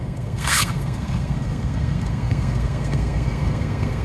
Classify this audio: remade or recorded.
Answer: remade